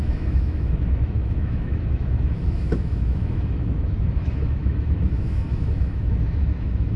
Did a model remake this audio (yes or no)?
yes